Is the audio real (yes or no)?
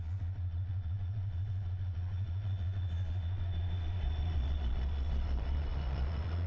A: no